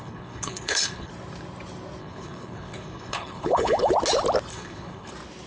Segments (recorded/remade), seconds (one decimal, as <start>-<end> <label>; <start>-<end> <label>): 0.0-1.1 remade; 1.1-2.0 recorded; 2.0-3.9 remade; 3.9-4.5 recorded; 4.5-5.1 remade; 5.1-5.5 recorded